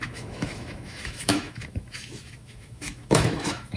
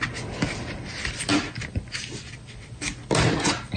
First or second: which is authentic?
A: second